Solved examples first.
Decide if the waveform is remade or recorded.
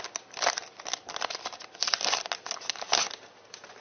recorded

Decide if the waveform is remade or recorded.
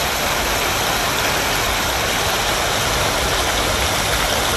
recorded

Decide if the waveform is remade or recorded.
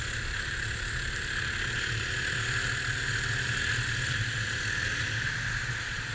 recorded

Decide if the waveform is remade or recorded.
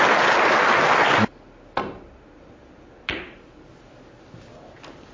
recorded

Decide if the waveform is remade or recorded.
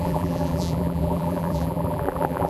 remade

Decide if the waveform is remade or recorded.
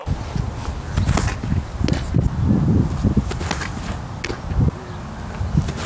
recorded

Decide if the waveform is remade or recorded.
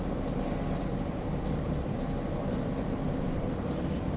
remade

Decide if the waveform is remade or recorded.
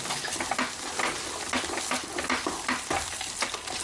recorded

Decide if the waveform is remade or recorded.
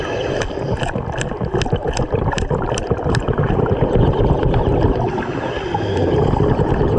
recorded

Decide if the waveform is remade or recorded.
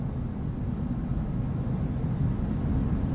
recorded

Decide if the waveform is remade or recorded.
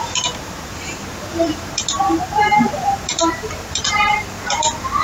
remade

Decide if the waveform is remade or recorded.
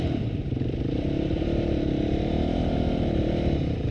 remade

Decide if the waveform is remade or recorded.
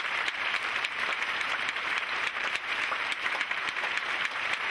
remade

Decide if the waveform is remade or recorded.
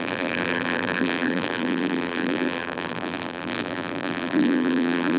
remade